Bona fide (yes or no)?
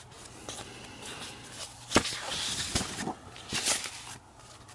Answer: yes